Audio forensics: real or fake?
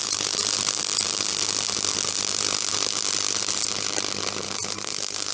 real